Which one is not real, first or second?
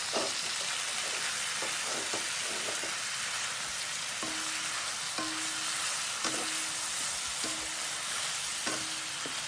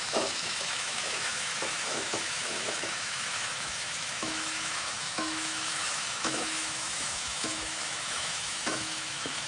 second